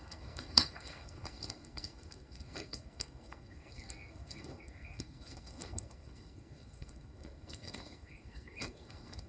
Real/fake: fake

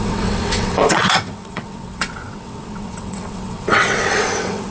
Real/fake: fake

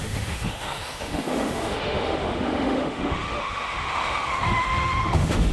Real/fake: fake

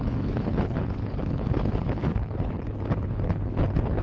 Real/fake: fake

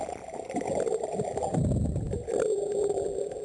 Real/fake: real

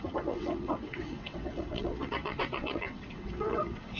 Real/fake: fake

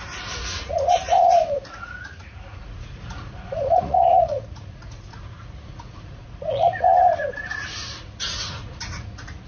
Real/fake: fake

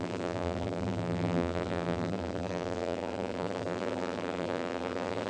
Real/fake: fake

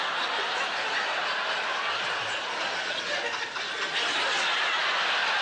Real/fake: real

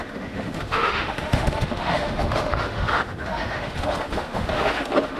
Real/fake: fake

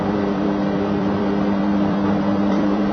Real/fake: fake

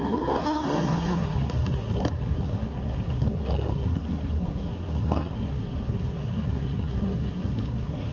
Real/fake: fake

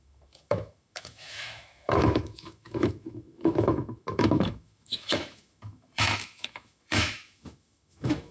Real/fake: fake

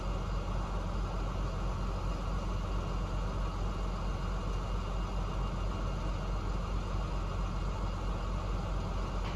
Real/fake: real